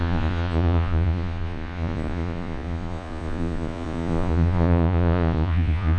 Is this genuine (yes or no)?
no